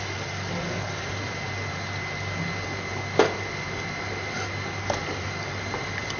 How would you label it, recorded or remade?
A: recorded